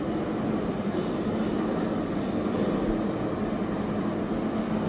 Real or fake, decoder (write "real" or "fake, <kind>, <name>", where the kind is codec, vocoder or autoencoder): real